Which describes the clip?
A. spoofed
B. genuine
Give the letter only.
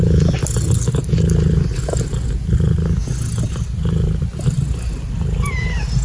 B